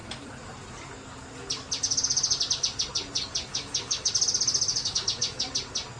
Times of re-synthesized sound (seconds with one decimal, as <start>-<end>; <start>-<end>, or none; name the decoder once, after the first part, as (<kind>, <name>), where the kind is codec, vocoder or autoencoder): 3.5-4.1 (autoencoder, DAC-VAE); 4.7-5.5